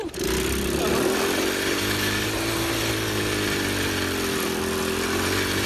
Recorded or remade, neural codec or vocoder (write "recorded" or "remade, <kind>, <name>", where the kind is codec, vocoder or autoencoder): recorded